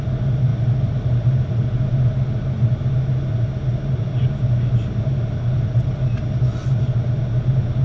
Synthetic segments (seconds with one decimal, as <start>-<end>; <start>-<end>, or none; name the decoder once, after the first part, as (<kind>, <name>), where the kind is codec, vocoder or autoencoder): none